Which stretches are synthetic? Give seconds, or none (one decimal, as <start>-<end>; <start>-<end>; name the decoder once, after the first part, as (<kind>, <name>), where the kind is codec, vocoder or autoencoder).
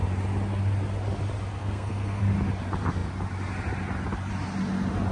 1.6-2.2 (codec, SNAC)